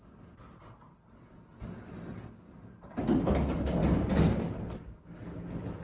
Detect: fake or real real